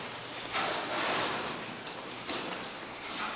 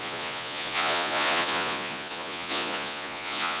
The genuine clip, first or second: first